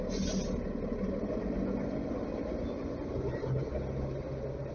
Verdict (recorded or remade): recorded